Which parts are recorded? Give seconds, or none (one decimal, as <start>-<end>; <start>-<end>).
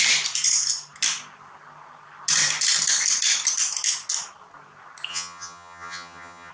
0.0-5.1